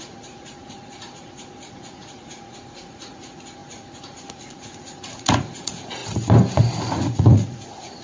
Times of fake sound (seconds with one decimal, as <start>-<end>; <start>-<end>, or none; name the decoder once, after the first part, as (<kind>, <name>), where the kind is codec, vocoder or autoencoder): 0.0-6.0 (vocoder, Vocos); 6.9-8.0